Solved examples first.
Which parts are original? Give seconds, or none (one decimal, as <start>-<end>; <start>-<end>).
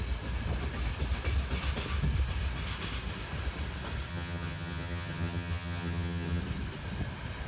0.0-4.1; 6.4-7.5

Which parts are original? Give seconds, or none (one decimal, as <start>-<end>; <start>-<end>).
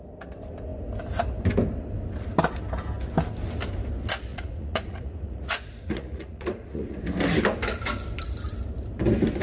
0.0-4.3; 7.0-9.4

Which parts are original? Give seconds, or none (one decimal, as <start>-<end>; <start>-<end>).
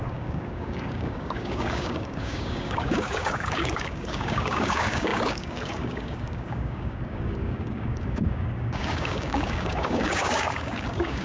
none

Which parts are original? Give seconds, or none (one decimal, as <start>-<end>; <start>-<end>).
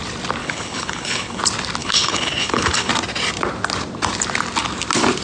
0.0-0.4; 1.4-1.8; 2.9-5.2